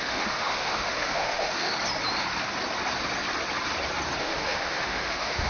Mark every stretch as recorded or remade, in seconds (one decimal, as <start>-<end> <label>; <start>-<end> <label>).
0.0-1.7 remade; 1.7-4.2 recorded; 4.2-5.5 remade